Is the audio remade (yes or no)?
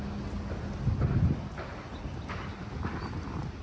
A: no